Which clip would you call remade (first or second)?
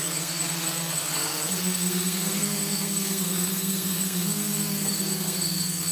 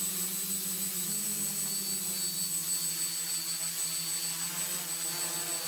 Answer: first